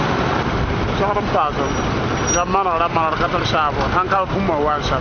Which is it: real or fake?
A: real